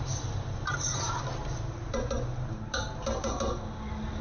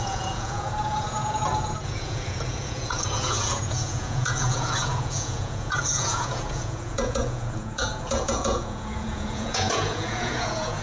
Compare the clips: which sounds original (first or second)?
first